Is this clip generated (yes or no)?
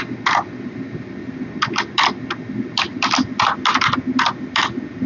no